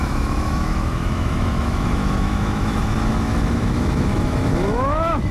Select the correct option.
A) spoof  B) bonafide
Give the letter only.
A